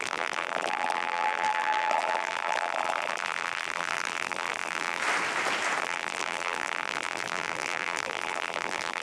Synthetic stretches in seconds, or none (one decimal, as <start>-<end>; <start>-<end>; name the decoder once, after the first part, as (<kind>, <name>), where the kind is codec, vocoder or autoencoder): 0.0-5.0 (vocoder, BigVGAN v2); 5.8-9.0